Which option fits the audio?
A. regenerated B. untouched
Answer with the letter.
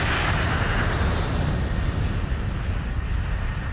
B